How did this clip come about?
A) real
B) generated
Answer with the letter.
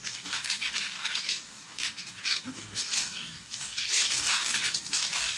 B